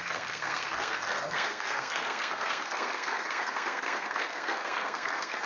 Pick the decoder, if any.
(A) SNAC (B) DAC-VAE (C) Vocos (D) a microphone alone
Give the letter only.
A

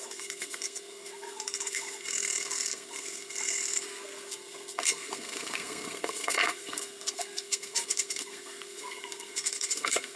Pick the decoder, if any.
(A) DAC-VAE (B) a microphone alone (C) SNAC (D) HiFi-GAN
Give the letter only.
C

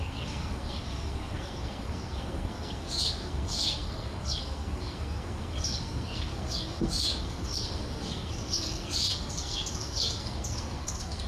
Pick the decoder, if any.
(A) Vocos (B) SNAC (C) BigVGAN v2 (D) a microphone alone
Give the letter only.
B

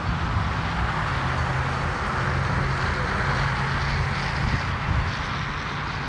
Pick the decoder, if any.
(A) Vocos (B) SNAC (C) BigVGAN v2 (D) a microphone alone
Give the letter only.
D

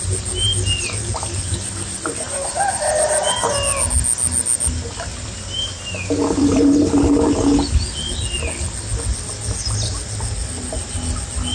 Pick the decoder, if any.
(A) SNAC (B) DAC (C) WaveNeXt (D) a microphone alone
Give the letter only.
D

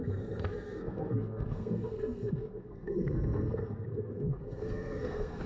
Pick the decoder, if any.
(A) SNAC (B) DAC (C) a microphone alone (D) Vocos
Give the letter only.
A